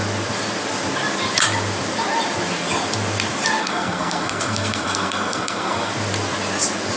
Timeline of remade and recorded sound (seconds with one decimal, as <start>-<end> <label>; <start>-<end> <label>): 0.0-3.6 recorded; 3.6-5.9 remade; 5.9-7.0 recorded

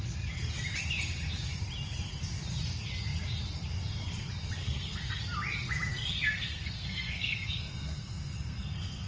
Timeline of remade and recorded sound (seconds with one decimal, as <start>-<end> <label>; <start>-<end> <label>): 0.0-4.6 recorded; 4.6-5.2 remade; 5.2-5.9 recorded; 5.9-9.1 remade